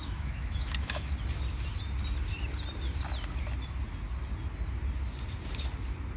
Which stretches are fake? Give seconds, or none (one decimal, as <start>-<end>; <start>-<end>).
0.0-1.1